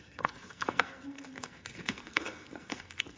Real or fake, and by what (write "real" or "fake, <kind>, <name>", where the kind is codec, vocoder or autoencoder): fake, codec, SNAC